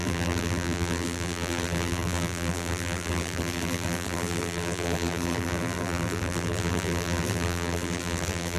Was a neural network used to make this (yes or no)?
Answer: yes